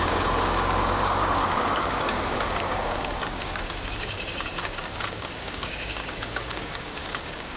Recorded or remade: remade